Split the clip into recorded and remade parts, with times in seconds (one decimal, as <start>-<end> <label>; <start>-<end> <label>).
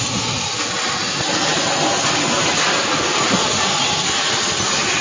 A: 0.0-5.0 recorded